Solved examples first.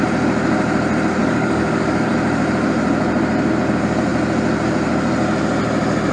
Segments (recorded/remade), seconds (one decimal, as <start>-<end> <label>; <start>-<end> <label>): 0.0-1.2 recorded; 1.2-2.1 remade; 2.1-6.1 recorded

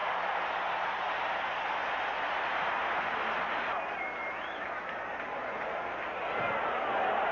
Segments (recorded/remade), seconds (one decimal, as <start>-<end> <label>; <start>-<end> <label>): 0.0-7.3 recorded

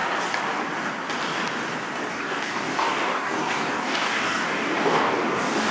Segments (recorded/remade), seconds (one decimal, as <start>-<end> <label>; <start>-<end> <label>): 0.0-2.1 recorded; 2.1-5.7 remade